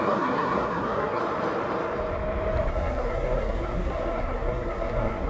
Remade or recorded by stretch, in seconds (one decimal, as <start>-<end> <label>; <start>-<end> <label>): 0.0-1.2 remade; 1.2-2.7 recorded; 2.7-5.3 remade